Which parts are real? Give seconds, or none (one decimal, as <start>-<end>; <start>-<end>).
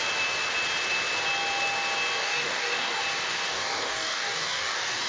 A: 0.0-2.2; 3.0-3.5